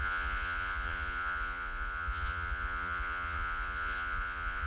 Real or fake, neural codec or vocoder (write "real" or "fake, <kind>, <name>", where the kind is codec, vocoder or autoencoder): fake, vocoder, Vocos